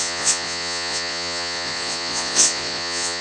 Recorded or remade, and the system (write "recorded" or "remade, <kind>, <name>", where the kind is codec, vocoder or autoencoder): remade, vocoder, Vocos